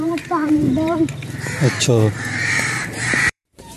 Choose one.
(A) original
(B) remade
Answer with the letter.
B